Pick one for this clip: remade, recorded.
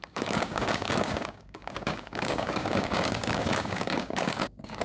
remade